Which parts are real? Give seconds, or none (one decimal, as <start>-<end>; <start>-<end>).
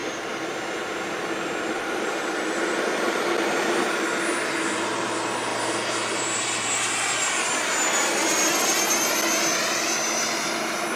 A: 0.0-11.0